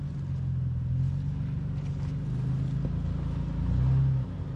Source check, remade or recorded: recorded